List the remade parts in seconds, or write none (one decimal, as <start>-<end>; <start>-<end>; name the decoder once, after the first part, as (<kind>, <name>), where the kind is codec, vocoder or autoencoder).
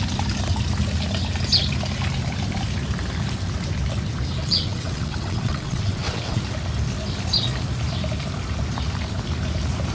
4.4-6.4 (vocoder, WaveNeXt)